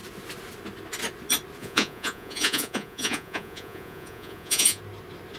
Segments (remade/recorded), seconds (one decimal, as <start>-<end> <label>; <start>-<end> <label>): 0.0-1.6 recorded; 1.6-4.8 remade; 4.8-5.4 recorded